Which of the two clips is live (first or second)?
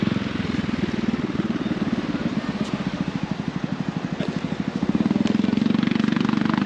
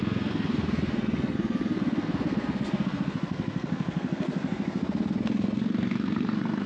first